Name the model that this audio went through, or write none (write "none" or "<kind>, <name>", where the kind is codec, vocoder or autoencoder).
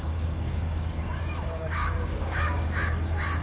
codec, DAC